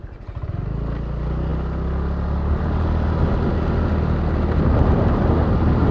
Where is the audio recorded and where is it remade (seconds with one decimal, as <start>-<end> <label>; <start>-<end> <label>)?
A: 0.0-5.9 recorded